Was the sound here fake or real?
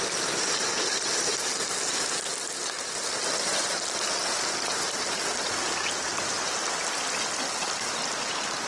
real